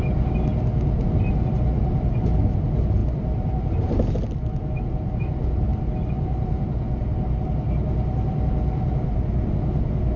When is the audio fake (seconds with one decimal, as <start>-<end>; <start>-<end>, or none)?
none